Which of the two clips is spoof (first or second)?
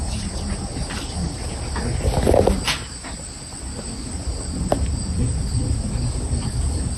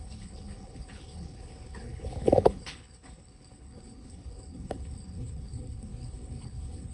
second